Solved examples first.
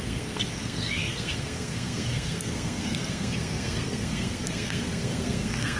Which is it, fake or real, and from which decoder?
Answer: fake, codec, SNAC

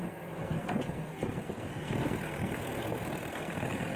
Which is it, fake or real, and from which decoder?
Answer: fake, codec, SNAC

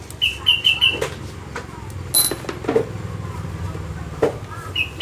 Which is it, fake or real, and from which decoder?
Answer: real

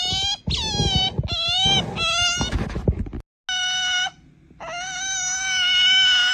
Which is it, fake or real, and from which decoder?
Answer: real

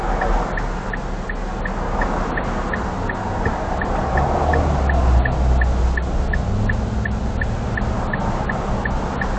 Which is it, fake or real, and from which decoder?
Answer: real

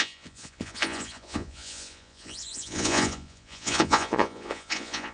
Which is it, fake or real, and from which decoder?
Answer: fake, vocoder, Vocos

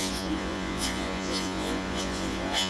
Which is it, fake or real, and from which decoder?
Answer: fake, vocoder, Vocos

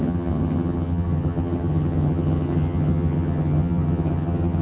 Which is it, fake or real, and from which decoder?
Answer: fake, vocoder, HiFi-GAN